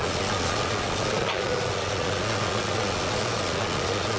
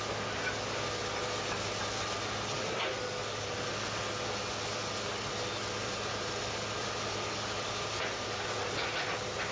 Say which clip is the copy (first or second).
first